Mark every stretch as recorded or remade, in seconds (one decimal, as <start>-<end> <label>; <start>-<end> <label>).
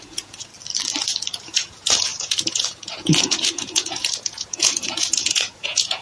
0.0-0.5 remade; 0.5-1.3 recorded; 1.3-6.0 remade